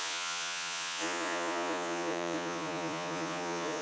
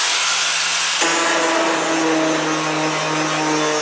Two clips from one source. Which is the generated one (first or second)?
first